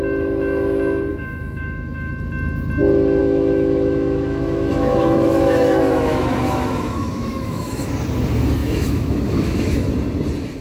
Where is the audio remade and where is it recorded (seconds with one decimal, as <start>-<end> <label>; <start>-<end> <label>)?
0.0-1.1 recorded; 1.1-2.1 remade; 2.1-3.2 recorded; 3.2-7.9 remade; 7.9-8.6 recorded; 8.6-9.9 remade; 9.9-10.6 recorded